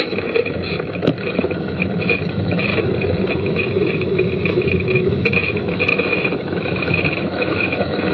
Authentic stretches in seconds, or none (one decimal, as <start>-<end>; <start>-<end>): 2.7-3.3